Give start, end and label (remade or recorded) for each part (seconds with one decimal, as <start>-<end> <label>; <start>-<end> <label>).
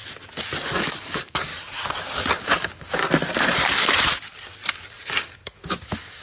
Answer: 0.0-0.8 recorded; 0.8-1.5 remade; 1.5-2.2 recorded; 2.2-3.0 remade; 3.0-4.7 recorded; 4.7-6.2 remade